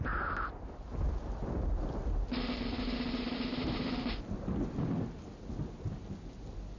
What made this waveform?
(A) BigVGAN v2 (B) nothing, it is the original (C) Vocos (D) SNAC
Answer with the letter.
B